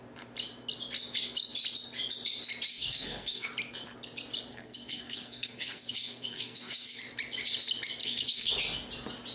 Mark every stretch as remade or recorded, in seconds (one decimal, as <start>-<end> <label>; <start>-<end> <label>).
0.0-2.7 recorded; 2.7-3.5 remade; 3.5-4.5 recorded; 4.5-7.0 remade; 7.0-8.0 recorded; 8.0-8.5 remade; 8.5-9.3 recorded

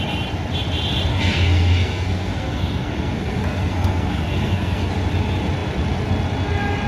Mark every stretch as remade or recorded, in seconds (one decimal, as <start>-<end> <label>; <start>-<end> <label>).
0.0-1.1 recorded; 1.1-4.9 remade; 4.9-6.9 recorded

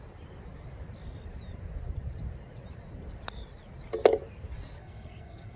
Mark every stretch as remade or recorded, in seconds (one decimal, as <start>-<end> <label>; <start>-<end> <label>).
0.0-4.8 recorded; 4.8-5.6 remade

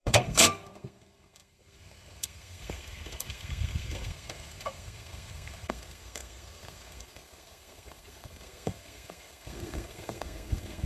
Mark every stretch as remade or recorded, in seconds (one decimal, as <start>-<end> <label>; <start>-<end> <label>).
0.0-10.9 remade